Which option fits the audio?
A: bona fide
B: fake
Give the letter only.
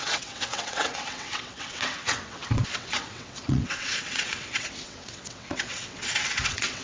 B